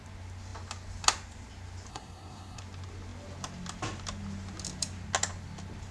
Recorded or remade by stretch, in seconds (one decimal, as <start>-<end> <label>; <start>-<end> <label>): 0.0-1.9 recorded; 1.9-2.6 remade; 2.6-5.9 recorded